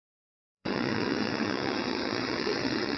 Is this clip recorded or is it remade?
remade